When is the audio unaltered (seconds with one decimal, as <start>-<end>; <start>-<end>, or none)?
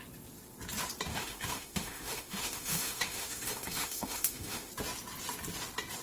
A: 0.0-1.1; 4.7-6.0